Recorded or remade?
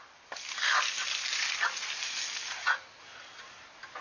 recorded